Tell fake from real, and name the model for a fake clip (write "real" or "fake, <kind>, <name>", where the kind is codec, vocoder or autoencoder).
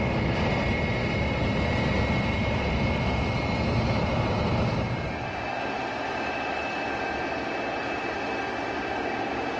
real